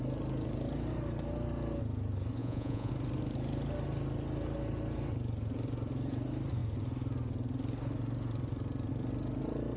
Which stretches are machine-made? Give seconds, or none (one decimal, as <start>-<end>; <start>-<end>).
2.4-2.9